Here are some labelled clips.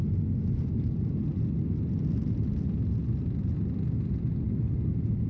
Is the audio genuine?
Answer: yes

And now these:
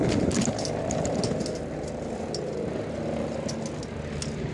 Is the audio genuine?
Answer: yes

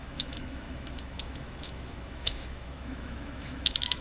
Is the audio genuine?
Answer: no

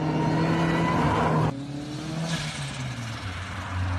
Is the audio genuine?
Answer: yes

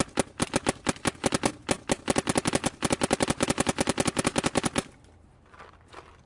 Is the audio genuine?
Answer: yes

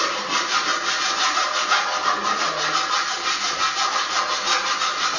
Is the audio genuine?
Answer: yes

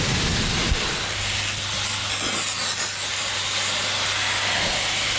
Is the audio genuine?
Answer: yes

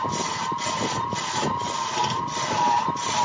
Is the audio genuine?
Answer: yes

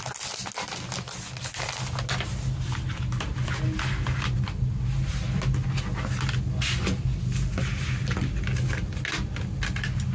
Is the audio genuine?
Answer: yes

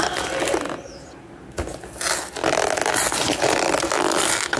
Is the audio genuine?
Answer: yes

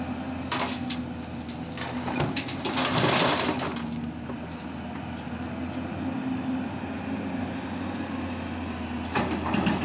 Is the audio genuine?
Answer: yes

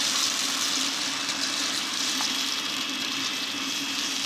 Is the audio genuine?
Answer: yes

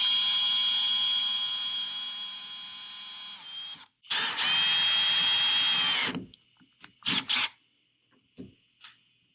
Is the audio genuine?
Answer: yes